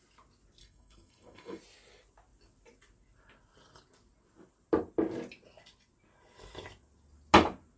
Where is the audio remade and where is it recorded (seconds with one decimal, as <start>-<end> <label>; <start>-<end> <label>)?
0.0-0.6 recorded; 0.6-1.6 remade; 1.6-7.8 recorded